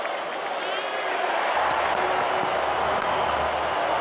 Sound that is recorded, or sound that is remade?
recorded